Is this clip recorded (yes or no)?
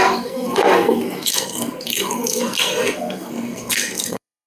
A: no